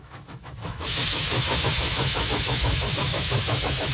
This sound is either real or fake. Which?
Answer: fake